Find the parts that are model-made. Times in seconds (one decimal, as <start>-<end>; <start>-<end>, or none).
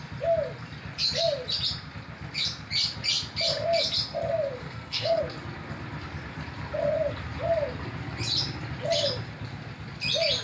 4.6-5.2